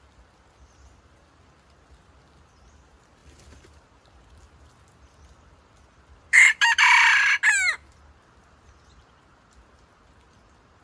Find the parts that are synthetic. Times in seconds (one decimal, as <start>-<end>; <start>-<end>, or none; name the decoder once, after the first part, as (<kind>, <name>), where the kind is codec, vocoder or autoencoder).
0.0-10.8 (vocoder, BigVGAN v2)